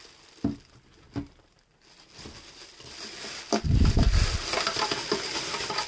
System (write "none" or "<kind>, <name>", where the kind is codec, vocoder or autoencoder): none